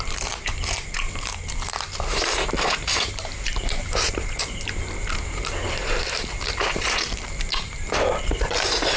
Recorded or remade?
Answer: remade